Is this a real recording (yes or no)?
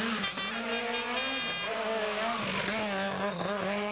yes